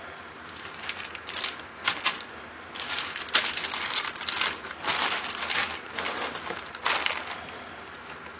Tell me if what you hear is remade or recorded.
recorded